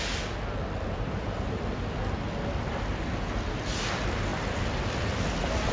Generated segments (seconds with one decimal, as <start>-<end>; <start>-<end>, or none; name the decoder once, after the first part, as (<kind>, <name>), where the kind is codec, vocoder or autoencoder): none

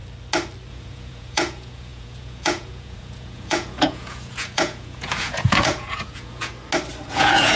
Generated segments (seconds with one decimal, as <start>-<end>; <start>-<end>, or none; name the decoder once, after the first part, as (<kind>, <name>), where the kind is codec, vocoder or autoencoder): 0.7-6.5 (vocoder, Vocos); 7.1-7.6

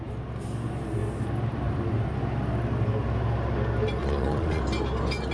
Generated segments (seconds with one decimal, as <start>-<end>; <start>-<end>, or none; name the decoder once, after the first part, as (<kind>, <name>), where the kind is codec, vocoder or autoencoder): 4.0-4.6 (vocoder, Vocos)

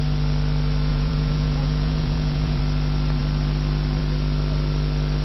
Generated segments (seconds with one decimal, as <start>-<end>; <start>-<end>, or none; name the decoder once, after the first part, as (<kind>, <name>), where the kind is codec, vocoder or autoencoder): 0.9-2.6 (vocoder, Vocos)

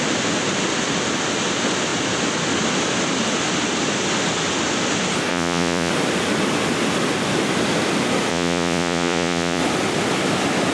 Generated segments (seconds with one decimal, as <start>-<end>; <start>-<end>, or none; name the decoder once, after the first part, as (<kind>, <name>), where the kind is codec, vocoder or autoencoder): 5.3-5.9 (vocoder, Vocos); 8.3-9.6

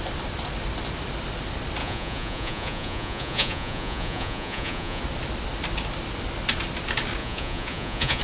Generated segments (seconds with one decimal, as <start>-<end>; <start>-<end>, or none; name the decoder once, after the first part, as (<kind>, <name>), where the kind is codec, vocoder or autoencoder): 1.8-5.0 (vocoder, Vocos); 7.2-8.2